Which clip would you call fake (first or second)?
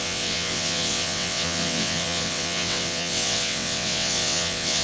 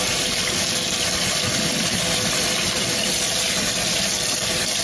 first